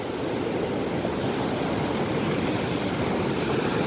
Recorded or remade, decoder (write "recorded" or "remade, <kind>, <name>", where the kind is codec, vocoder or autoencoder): recorded